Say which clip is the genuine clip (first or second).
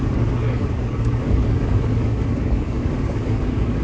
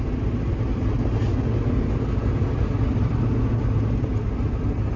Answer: second